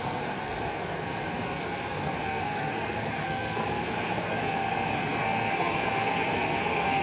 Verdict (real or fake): fake